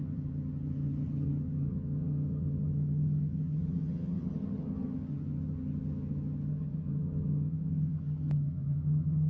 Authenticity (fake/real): fake